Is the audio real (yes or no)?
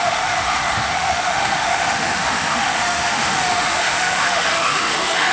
no